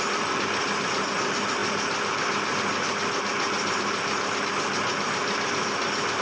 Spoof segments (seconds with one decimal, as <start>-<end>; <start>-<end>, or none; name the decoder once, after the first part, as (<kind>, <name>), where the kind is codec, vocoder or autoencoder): none